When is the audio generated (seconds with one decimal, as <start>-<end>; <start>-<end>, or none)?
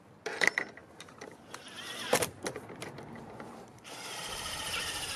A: none